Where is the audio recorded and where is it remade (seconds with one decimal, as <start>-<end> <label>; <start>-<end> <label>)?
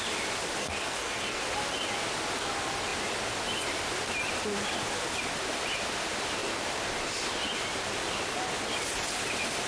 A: 0.0-0.6 recorded; 0.6-1.4 remade; 1.4-9.7 recorded